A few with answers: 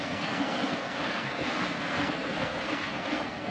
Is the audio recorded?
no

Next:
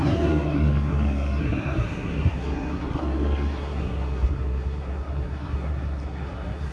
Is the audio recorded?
no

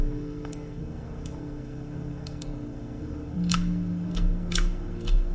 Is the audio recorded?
no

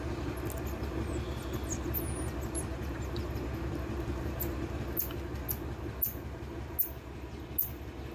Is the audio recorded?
yes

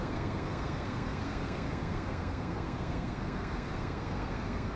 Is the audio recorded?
no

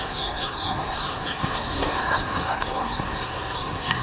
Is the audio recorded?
no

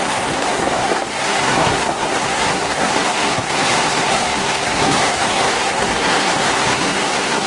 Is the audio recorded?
no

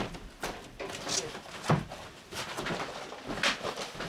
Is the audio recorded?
yes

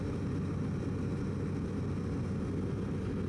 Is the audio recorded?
yes